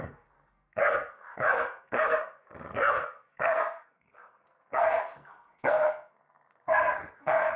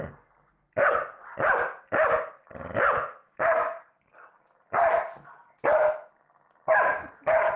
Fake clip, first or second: first